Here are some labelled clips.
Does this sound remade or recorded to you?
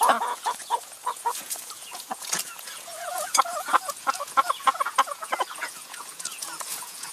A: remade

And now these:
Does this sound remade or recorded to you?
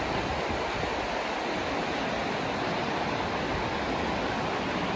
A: recorded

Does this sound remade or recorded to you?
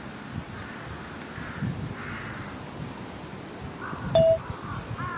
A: recorded